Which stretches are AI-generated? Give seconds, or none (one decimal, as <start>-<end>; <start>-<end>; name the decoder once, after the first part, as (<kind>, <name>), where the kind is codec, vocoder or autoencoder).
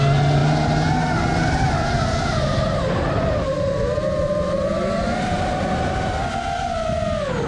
0.4-1.7 (vocoder, BigVGAN v2); 2.1-6.1